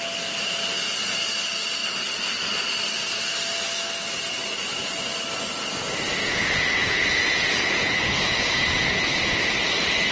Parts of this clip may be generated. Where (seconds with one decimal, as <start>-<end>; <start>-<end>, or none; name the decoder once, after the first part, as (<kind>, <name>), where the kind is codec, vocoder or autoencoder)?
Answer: 6.2-9.1 (vocoder, Vocos)